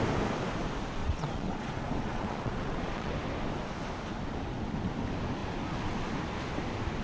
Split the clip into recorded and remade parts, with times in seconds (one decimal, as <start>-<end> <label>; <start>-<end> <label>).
0.0-1.0 recorded; 1.0-3.1 remade; 3.1-7.0 recorded